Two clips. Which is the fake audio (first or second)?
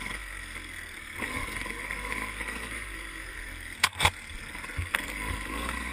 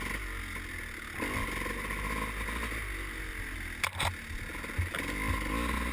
first